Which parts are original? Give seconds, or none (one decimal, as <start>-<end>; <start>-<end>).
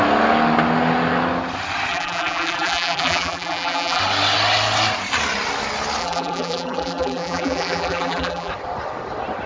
0.0-1.9; 4.0-6.0; 8.5-9.5